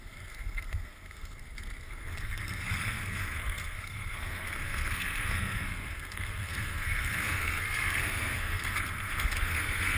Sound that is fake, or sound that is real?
fake